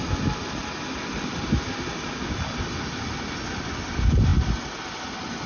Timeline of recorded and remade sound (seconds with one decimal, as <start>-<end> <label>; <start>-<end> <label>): 0.0-5.5 recorded